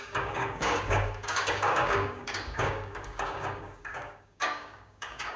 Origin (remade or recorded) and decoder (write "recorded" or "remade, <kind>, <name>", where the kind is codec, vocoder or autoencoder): remade, codec, DAC